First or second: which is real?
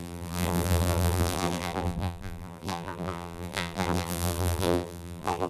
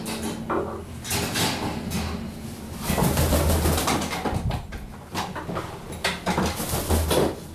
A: second